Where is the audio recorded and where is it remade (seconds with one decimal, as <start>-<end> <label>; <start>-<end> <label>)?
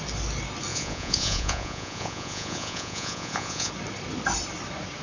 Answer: 0.0-0.7 recorded; 0.7-3.7 remade; 3.7-5.0 recorded